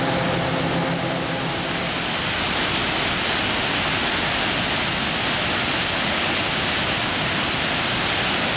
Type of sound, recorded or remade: recorded